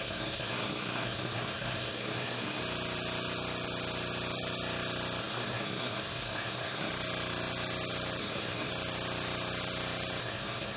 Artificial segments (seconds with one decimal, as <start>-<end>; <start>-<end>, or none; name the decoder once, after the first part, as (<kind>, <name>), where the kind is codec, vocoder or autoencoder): 0.0-2.6 (codec, SNAC); 5.2-6.9; 8.2-8.7; 10.2-10.8